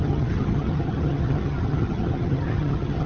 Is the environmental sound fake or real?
fake